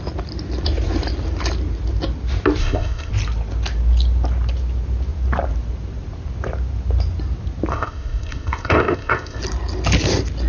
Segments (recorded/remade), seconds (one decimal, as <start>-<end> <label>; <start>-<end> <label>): 0.0-2.6 recorded; 2.6-3.1 remade; 3.1-7.7 recorded; 7.7-9.4 remade; 9.4-10.5 recorded